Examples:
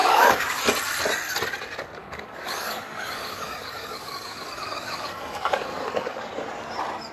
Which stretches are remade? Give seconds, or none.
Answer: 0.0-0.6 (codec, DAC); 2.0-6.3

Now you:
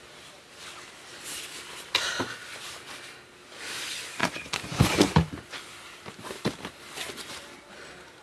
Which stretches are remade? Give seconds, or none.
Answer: 4.2-5.7 (vocoder, Vocos)